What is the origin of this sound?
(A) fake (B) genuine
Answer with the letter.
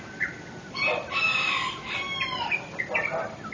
B